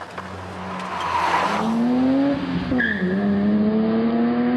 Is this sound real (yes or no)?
yes